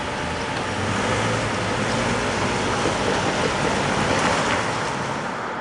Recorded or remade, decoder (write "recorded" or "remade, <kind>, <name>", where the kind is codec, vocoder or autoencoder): recorded